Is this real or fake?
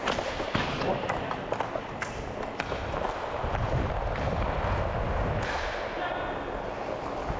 real